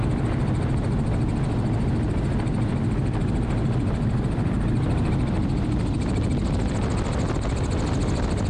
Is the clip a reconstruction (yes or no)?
no